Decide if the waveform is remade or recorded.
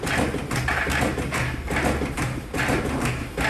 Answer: recorded